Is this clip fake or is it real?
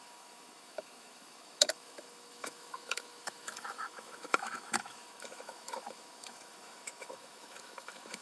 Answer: fake